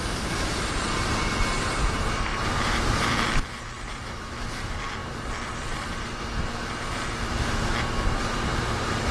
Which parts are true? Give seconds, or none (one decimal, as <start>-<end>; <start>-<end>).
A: none